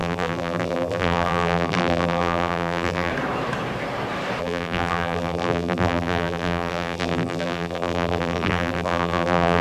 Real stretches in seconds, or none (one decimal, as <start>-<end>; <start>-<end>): 3.1-4.4